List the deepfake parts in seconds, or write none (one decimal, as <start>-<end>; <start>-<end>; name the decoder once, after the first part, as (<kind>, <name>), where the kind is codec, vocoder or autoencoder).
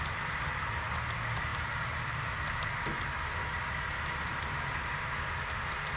none